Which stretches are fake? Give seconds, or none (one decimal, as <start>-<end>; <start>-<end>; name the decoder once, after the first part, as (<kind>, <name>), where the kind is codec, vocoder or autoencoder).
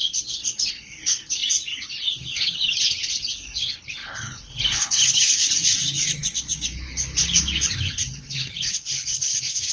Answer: 0.0-1.4 (codec, HILCodec); 2.0-9.7